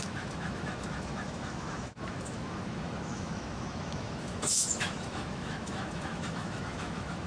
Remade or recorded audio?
remade